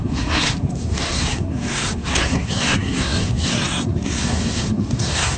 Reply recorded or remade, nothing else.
remade